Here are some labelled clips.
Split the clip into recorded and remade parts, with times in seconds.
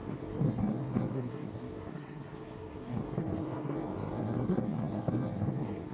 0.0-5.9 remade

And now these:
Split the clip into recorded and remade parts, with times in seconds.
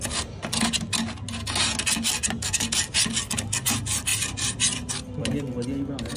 0.0-6.2 recorded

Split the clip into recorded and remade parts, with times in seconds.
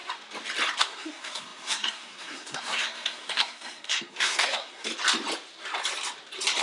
0.0-0.8 recorded; 0.8-4.9 remade; 4.9-6.6 recorded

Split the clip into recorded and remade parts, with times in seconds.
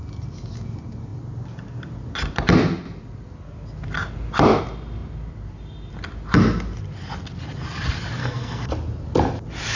0.0-8.2 recorded; 8.2-8.7 remade; 8.7-9.8 recorded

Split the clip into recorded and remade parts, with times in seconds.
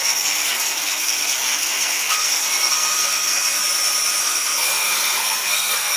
0.0-3.6 remade; 3.6-4.2 recorded; 4.2-6.0 remade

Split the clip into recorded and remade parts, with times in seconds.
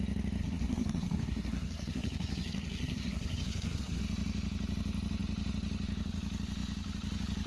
0.0-0.4 recorded; 0.4-4.0 remade; 4.0-7.5 recorded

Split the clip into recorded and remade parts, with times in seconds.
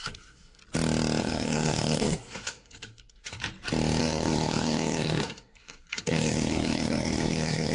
0.0-0.6 remade; 0.6-1.2 recorded; 1.2-3.4 remade; 3.4-4.0 recorded; 4.0-7.7 remade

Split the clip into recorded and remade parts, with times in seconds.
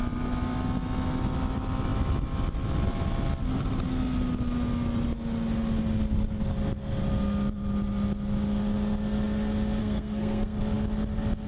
0.0-9.8 recorded; 9.8-10.6 remade; 10.6-11.5 recorded